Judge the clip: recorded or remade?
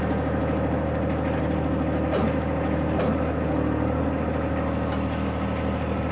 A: recorded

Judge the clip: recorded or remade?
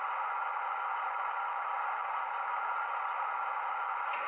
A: remade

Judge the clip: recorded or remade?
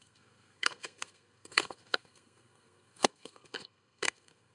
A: remade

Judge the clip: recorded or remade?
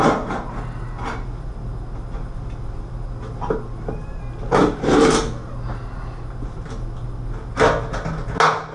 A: recorded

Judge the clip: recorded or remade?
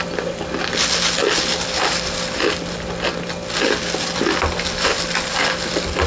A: recorded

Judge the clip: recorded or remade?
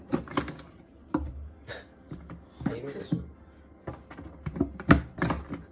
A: recorded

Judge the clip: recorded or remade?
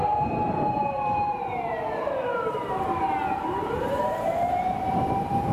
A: remade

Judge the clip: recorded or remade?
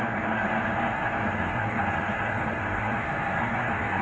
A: remade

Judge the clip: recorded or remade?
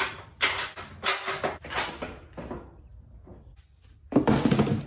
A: recorded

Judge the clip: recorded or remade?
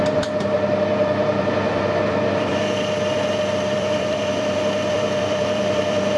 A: remade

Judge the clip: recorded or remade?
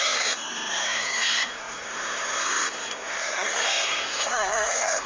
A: remade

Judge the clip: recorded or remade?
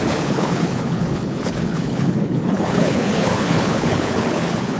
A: remade